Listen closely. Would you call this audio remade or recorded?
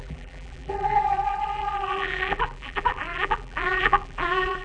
remade